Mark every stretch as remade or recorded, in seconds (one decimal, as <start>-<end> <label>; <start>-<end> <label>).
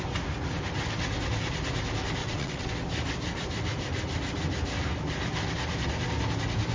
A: 0.0-2.2 recorded; 2.2-2.7 remade; 2.7-6.7 recorded